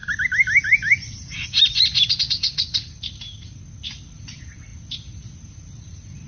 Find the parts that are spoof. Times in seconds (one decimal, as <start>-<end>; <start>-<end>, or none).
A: 0.0-3.6